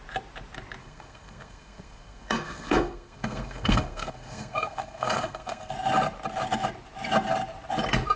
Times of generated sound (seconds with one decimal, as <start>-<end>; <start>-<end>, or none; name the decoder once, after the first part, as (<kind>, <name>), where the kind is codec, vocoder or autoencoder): 0.8-5.7 (codec, SNAC)